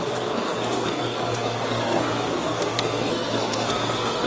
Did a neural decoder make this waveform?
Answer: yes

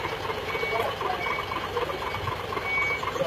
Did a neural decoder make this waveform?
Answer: no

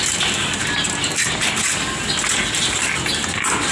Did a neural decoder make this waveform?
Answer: no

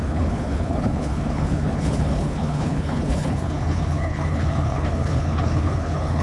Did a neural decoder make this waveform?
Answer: yes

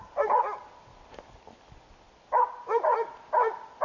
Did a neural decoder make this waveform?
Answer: no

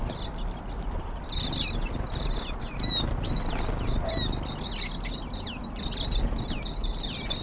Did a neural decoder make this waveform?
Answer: no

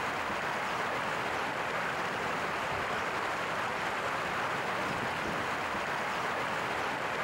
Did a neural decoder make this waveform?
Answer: no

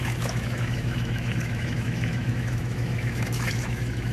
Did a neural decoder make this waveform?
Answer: yes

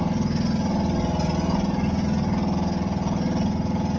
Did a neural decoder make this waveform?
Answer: no